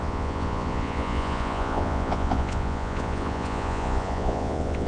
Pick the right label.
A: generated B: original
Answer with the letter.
A